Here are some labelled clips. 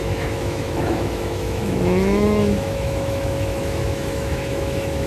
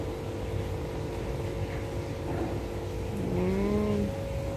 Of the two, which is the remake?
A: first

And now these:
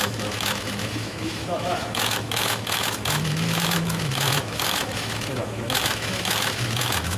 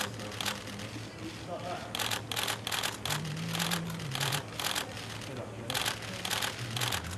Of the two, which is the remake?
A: first